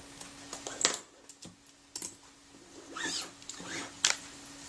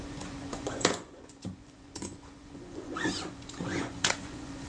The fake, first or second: second